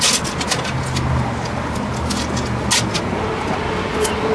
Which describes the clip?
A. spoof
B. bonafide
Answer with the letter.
B